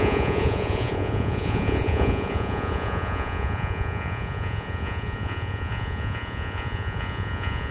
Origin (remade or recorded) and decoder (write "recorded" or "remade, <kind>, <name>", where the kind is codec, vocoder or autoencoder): remade, vocoder, Vocos